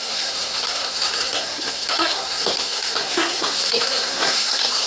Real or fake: fake